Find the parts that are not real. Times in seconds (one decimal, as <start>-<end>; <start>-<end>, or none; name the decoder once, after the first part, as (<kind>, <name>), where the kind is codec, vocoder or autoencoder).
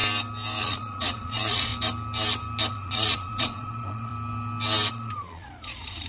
0.6-1.7 (vocoder, Vocos); 2.7-4.1; 4.9-6.1